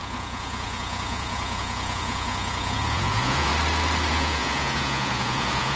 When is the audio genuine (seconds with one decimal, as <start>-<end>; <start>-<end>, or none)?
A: 3.5-4.1